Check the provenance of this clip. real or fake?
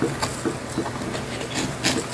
real